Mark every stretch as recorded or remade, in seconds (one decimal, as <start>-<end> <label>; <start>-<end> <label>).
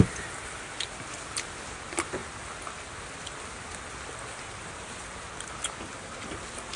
0.0-6.8 recorded